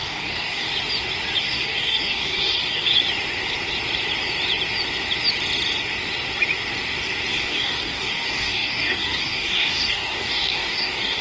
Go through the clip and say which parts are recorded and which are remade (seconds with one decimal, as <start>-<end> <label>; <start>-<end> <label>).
0.0-0.7 remade; 0.7-1.4 recorded; 1.4-2.9 remade; 2.9-7.3 recorded; 7.3-11.2 remade